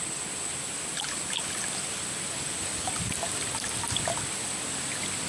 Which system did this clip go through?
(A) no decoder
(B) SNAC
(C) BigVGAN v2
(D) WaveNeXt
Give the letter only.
A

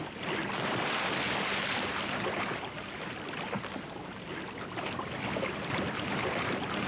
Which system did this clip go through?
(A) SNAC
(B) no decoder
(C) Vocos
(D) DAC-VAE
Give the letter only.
B